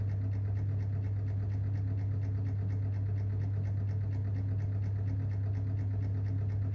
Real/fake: real